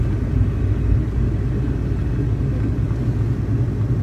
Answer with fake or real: real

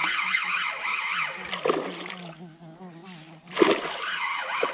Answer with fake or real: real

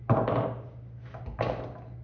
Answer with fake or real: real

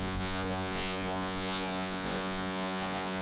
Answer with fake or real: fake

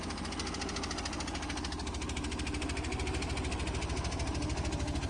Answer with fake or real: real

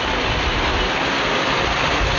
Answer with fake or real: fake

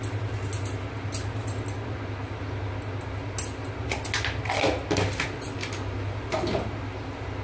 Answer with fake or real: real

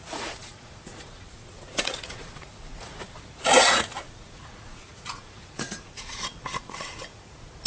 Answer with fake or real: fake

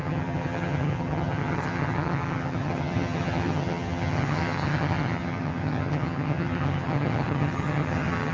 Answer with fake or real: fake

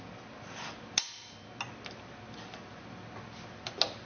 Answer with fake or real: real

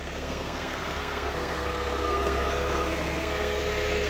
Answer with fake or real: fake